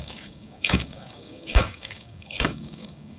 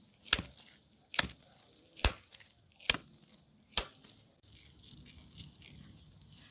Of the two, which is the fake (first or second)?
first